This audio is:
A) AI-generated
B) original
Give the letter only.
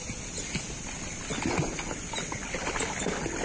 B